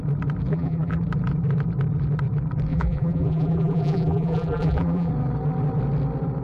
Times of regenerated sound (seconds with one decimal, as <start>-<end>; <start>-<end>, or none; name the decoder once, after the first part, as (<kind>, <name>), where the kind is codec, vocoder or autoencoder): 0.5-1.0 (vocoder, BigVGAN v2); 2.7-5.1